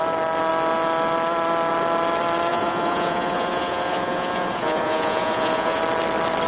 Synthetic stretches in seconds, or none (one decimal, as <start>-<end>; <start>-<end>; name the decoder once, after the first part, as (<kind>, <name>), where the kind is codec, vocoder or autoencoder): 2.5-5.8 (vocoder, Vocos)